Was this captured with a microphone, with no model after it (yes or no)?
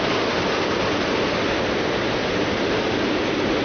yes